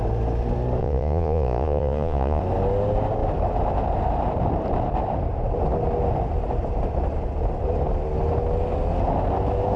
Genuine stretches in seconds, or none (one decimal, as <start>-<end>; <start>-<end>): 0.0-0.8; 2.4-9.8